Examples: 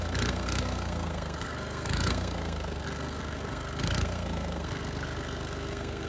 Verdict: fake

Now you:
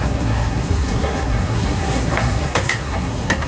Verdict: fake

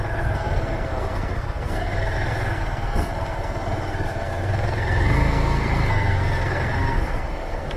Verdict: fake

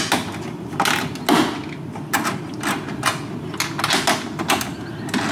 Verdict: real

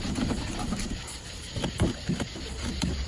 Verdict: real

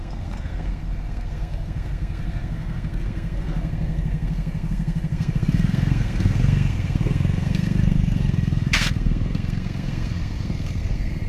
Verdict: fake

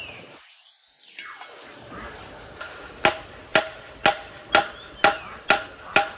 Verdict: real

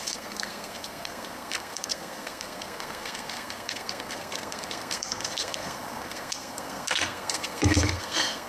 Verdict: fake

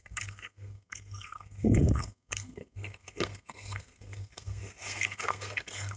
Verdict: fake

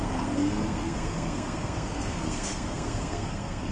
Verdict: fake